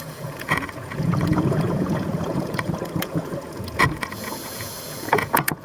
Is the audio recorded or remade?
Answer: remade